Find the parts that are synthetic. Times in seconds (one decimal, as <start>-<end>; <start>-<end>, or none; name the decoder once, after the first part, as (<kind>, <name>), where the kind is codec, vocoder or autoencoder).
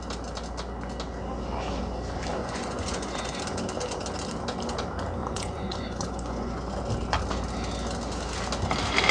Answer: 2.4-3.4 (vocoder, Vocos); 5.2-6.6